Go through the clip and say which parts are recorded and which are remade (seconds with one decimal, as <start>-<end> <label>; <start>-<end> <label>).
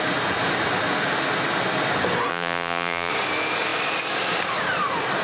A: 0.0-2.3 recorded; 2.3-3.1 remade; 3.1-5.2 recorded